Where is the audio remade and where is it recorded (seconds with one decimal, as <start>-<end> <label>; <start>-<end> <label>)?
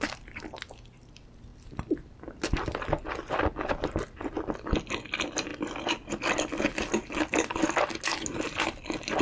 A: 0.0-9.2 recorded